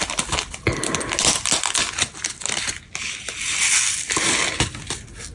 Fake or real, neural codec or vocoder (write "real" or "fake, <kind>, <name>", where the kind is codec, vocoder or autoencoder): real